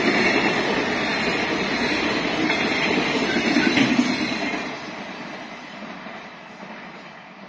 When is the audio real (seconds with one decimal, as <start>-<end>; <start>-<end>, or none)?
0.0-7.5